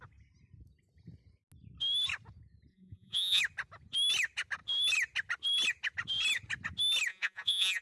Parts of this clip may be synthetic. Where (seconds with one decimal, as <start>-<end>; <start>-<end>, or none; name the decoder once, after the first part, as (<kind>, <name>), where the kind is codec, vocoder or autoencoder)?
2.7-3.4 (vocoder, Vocos); 7.1-7.8